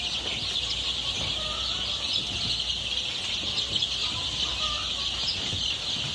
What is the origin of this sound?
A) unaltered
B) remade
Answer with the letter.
A